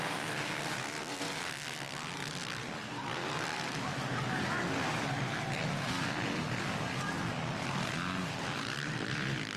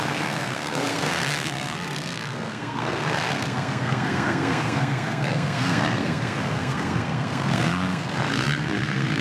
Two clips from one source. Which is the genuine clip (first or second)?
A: first